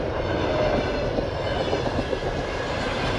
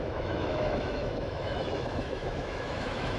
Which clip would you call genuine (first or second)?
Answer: first